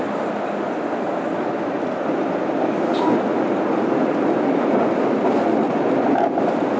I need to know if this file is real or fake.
real